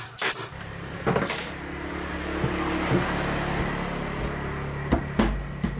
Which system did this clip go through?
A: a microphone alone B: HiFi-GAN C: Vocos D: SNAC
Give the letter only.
A